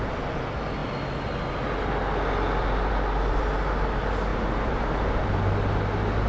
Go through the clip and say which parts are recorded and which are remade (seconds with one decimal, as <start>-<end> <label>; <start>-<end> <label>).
0.0-4.3 recorded; 4.3-5.3 remade; 5.3-6.3 recorded